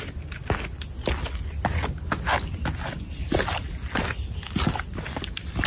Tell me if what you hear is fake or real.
real